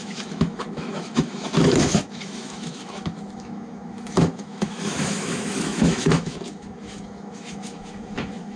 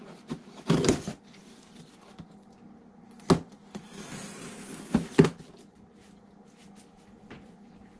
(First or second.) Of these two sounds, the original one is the second